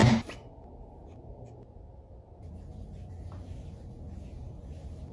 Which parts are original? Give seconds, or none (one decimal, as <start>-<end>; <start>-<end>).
0.0-5.1